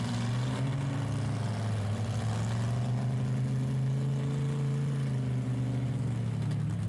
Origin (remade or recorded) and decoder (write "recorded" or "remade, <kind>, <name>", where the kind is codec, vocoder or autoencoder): recorded